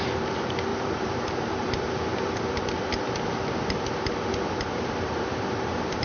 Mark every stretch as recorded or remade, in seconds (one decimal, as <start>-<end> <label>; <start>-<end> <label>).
0.0-0.7 recorded; 0.7-3.6 remade; 3.6-6.0 recorded

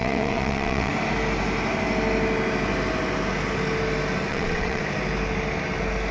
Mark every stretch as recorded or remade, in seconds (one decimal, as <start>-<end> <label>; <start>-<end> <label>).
0.0-0.9 remade; 0.9-4.3 recorded; 4.3-4.8 remade; 4.8-6.1 recorded

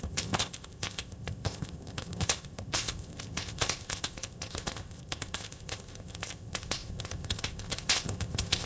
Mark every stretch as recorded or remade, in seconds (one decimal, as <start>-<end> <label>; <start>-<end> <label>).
0.0-8.7 remade

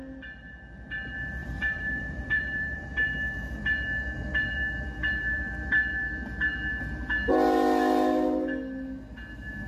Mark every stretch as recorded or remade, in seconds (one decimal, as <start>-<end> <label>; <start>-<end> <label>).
0.0-1.4 recorded; 1.4-2.9 remade; 2.9-9.7 recorded